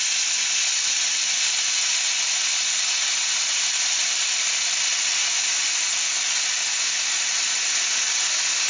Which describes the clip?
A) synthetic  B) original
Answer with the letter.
B